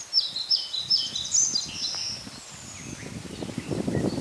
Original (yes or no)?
yes